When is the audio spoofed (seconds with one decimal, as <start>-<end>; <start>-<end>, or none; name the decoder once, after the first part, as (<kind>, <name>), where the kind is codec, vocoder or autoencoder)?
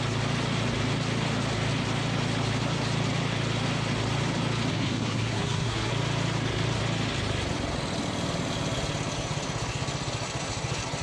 4.7-5.9 (codec, SNAC)